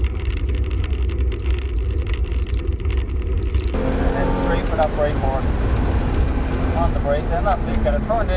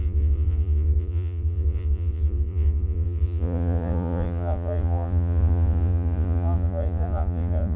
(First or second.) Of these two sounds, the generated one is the second